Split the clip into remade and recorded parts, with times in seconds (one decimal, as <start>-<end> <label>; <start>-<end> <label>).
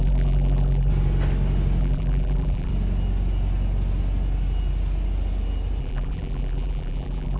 0.0-0.9 remade; 0.9-1.8 recorded; 1.8-2.7 remade; 2.7-5.8 recorded; 5.8-7.4 remade